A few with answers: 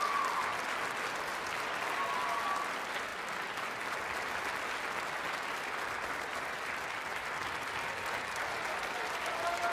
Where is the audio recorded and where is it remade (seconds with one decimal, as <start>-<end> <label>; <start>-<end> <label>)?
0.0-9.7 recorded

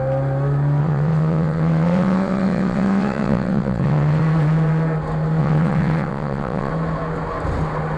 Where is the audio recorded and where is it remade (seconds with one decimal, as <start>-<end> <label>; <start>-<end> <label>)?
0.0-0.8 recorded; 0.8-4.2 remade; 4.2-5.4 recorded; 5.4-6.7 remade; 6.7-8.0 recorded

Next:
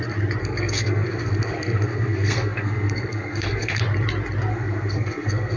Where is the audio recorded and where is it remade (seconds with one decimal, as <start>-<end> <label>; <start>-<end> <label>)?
0.0-0.4 recorded; 0.4-3.8 remade; 3.8-4.5 recorded; 4.5-5.6 remade